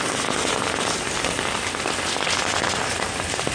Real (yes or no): yes